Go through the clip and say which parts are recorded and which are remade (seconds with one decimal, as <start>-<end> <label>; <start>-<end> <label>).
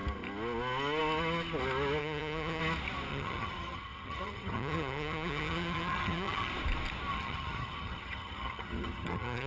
0.0-2.0 recorded; 2.0-2.6 remade; 2.6-3.1 recorded; 3.1-6.5 remade; 6.5-7.1 recorded; 7.1-9.5 remade